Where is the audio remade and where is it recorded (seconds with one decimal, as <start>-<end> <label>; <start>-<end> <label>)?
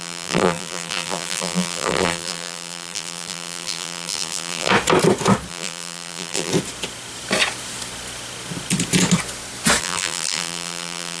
0.0-4.7 remade; 4.7-5.5 recorded; 5.5-6.5 remade; 6.5-9.8 recorded; 9.8-11.2 remade